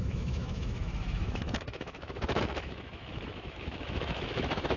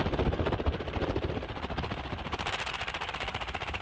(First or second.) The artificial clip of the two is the first